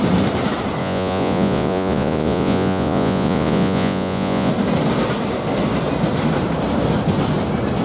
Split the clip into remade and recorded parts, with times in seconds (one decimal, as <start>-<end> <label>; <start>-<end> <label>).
0.0-0.8 recorded; 0.8-4.5 remade; 4.5-7.8 recorded